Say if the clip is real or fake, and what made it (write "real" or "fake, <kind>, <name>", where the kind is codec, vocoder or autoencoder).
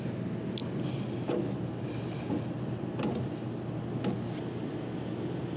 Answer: real